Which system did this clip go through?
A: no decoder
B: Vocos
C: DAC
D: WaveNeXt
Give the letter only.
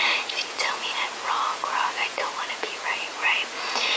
B